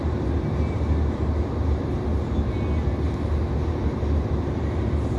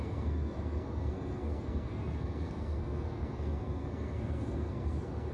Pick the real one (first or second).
first